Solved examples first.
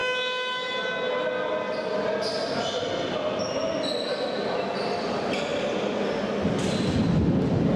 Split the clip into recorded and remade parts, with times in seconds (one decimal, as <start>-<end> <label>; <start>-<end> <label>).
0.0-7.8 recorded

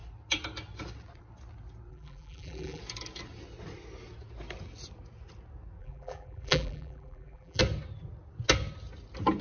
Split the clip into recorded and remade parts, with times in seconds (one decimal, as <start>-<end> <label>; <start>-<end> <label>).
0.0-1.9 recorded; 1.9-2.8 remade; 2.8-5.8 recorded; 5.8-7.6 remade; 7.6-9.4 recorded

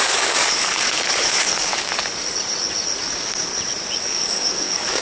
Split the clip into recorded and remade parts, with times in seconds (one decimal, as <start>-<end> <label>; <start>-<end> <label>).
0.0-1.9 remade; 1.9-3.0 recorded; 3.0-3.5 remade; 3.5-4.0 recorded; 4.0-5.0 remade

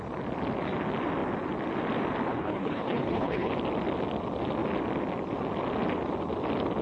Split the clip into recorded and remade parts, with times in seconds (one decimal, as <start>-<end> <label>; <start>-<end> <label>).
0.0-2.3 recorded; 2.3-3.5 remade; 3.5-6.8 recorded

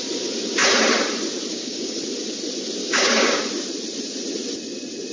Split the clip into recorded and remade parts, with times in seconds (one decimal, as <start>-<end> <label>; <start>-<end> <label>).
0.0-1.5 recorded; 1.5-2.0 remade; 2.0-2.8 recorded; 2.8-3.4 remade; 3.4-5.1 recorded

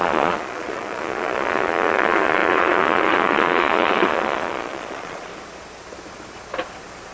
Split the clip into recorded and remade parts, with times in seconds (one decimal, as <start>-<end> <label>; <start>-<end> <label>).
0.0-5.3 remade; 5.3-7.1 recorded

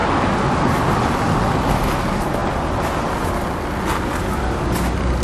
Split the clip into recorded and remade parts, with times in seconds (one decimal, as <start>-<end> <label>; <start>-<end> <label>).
0.0-5.2 recorded